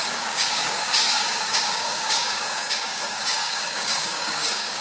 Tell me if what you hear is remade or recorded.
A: remade